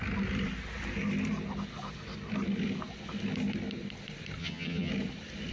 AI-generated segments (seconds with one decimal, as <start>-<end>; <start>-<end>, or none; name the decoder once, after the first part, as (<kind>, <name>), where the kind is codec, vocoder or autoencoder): 4.4-4.9 (vocoder, HiFi-GAN)